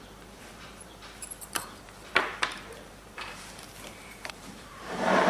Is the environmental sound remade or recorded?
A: remade